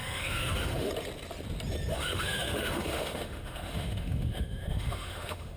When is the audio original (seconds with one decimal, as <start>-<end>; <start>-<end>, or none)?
0.9-1.9